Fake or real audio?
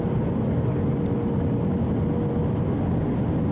fake